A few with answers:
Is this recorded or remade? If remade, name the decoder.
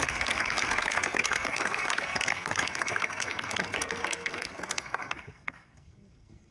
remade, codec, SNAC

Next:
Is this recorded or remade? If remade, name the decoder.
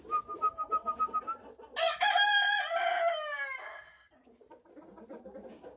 recorded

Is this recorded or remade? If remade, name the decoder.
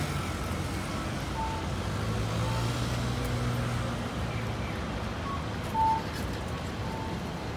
recorded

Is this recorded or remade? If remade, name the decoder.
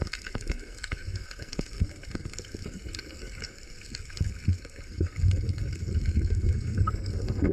remade, codec, SNAC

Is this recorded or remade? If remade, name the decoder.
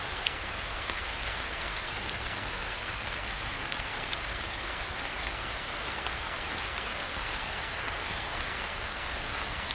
remade, codec, SNAC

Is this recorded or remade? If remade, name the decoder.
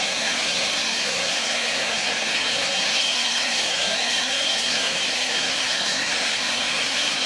remade, codec, SNAC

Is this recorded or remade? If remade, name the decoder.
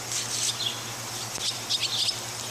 recorded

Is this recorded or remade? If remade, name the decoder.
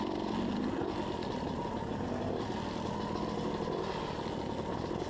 recorded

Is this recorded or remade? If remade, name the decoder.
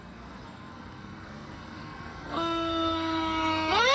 remade, codec, SNAC